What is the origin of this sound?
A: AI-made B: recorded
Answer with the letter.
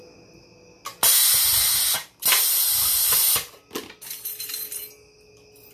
B